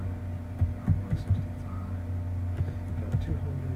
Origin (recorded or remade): recorded